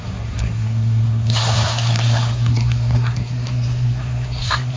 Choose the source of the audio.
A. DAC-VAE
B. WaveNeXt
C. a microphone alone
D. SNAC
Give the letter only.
D